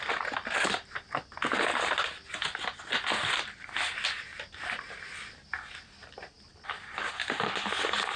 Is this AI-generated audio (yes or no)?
no